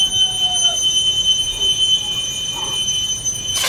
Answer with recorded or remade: recorded